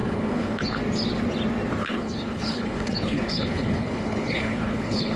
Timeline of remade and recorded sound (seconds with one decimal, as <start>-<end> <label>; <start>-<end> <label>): 0.0-0.8 remade; 0.8-1.8 recorded; 1.8-5.2 remade